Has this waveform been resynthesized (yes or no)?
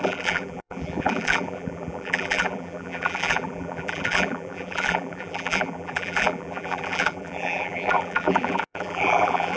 yes